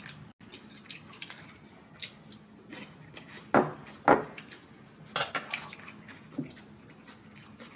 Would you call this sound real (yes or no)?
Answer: yes